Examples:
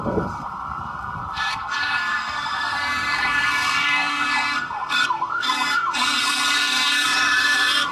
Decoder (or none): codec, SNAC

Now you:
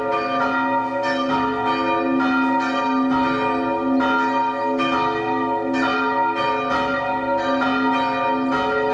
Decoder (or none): none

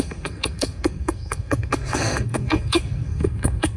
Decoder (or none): codec, SNAC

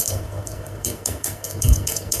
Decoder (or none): codec, SNAC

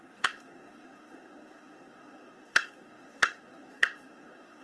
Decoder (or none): codec, SNAC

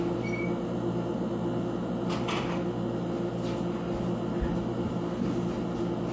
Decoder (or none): none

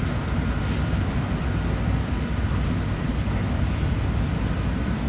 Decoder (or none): none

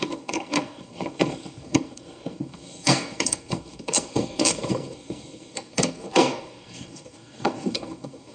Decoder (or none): codec, SNAC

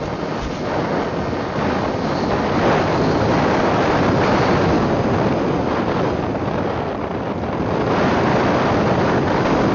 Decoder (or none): none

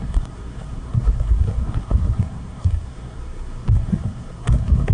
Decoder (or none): codec, SNAC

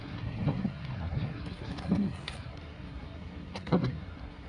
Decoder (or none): codec, SNAC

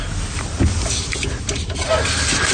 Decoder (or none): none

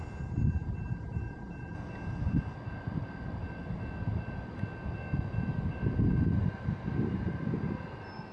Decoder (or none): none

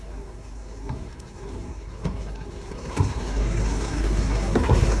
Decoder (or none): codec, SNAC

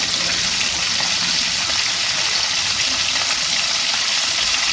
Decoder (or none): none